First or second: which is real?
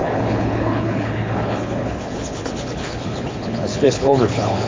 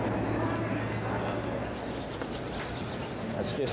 second